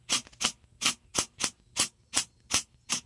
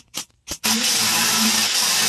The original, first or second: first